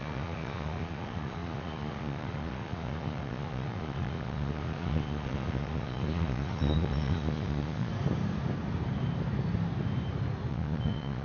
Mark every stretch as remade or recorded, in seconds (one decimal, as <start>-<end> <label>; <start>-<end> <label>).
0.0-7.9 remade; 7.9-10.5 recorded; 10.5-11.2 remade